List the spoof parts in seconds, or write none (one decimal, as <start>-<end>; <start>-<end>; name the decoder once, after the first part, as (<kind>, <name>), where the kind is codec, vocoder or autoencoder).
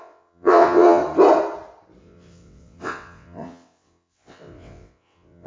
0.0-1.0 (vocoder, WaveNeXt); 2.0-5.5